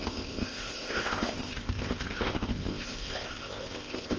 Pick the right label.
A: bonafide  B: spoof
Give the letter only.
B